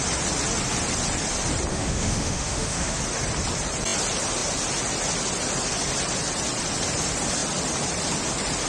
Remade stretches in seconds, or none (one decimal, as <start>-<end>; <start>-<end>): 1.7-3.0